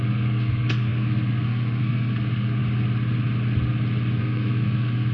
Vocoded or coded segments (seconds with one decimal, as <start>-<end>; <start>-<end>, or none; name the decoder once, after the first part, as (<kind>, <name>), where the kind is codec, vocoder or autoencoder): 0.0-2.6 (codec, SNAC); 4.2-5.1

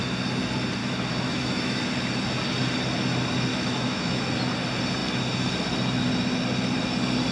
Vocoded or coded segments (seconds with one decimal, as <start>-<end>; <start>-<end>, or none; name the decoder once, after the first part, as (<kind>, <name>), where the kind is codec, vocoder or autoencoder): 0.8-1.8 (autoencoder, DAC-VAE); 3.5-4.2

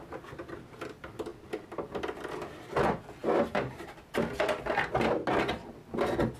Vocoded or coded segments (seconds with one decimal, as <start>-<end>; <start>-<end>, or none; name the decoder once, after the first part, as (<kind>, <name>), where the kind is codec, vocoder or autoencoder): none